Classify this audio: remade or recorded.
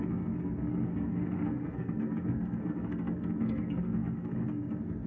remade